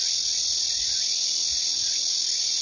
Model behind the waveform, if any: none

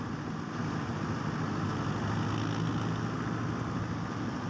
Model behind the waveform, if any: none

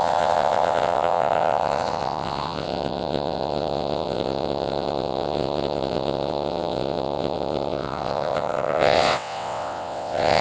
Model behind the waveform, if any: vocoder, WaveNeXt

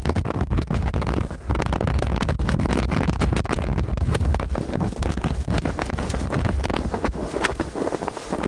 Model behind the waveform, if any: autoencoder, DAC-VAE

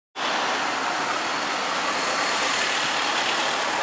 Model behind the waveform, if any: none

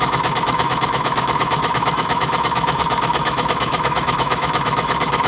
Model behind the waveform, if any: autoencoder, DAC-VAE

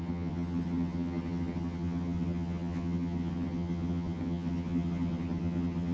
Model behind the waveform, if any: vocoder, HiFi-GAN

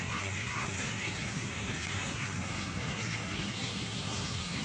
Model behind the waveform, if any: codec, SNAC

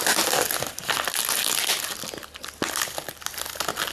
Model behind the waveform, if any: none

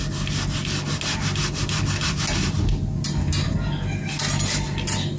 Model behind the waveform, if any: none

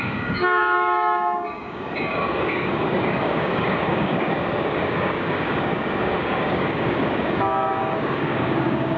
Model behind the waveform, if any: codec, DAC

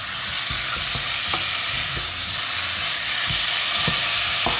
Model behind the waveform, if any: none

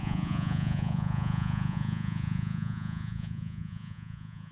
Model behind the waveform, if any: vocoder, Vocos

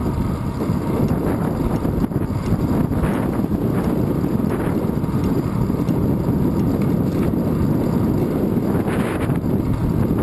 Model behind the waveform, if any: none